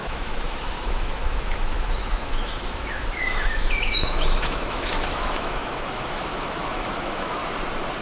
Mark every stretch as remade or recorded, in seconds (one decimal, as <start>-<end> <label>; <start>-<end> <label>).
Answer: 0.0-7.4 remade; 7.4-8.0 recorded